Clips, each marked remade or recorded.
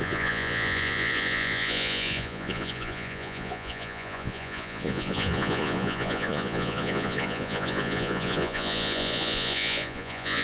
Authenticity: remade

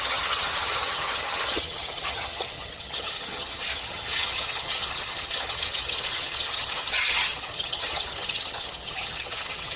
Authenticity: remade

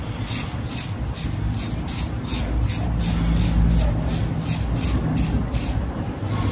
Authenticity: recorded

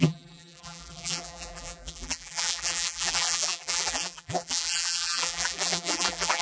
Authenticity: remade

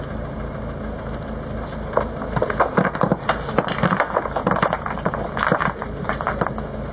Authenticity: recorded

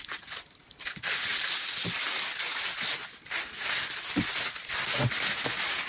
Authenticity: recorded